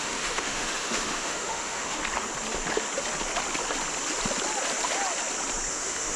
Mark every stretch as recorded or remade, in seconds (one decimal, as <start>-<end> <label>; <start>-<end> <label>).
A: 0.0-2.0 remade; 2.0-5.7 recorded; 5.7-6.2 remade